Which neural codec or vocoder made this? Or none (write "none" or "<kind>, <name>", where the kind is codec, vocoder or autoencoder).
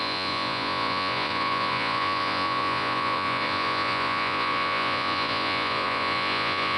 vocoder, Vocos